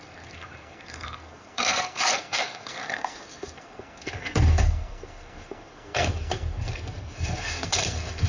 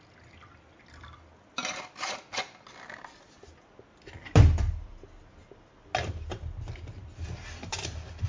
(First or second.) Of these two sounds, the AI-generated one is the first